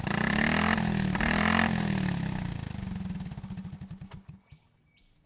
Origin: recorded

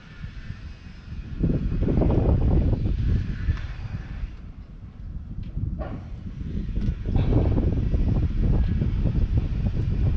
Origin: remade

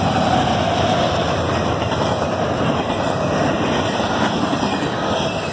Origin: remade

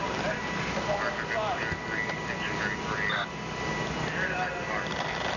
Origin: recorded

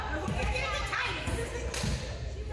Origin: recorded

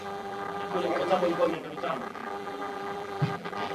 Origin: remade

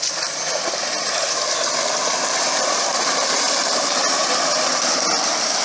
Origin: remade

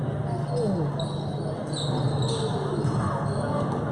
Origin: recorded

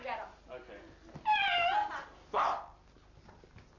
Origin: recorded